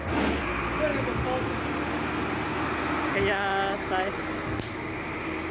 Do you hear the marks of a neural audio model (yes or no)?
no